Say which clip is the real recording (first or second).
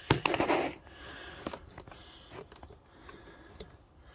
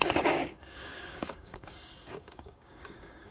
first